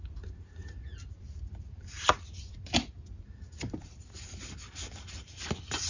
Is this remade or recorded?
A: recorded